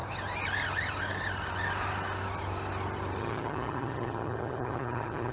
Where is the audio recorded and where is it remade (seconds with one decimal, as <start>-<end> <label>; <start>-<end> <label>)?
0.0-3.2 recorded; 3.2-5.3 remade